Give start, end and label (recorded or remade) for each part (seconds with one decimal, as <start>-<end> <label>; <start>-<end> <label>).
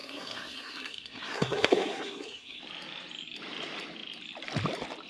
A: 0.0-2.6 remade; 2.6-5.1 recorded